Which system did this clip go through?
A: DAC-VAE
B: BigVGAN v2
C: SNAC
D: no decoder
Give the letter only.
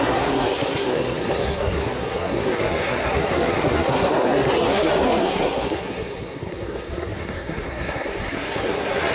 C